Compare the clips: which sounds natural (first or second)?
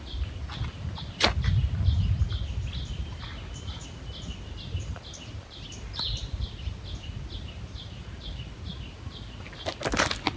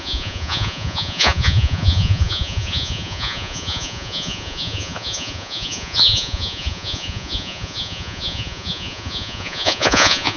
first